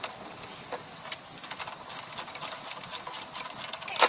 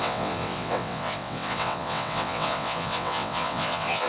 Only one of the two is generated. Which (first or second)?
second